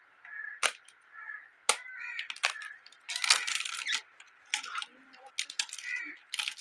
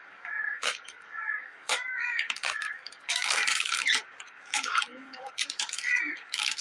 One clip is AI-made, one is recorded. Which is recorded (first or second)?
first